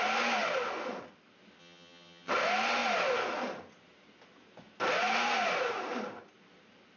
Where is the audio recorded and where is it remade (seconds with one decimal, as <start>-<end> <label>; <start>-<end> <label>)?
0.0-1.6 recorded; 1.6-2.3 remade; 2.3-7.0 recorded